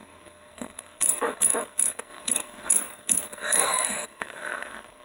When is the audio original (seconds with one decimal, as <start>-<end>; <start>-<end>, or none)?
none